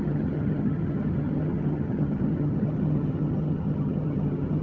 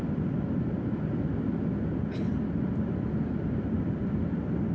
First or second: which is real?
second